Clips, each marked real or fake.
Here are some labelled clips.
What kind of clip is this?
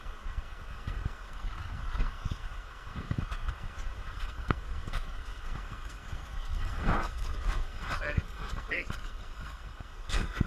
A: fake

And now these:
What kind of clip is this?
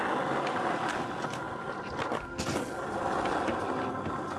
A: real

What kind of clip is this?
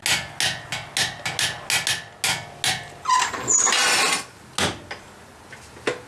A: real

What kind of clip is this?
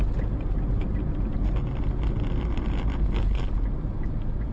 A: real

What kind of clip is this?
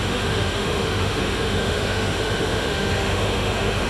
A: fake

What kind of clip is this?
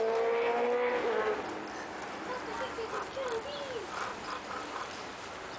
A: real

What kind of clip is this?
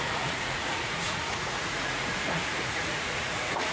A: fake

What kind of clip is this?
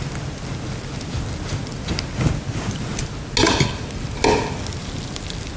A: real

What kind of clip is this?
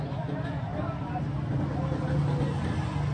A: real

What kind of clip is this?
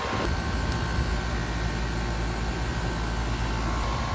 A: real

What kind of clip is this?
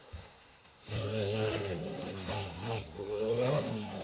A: fake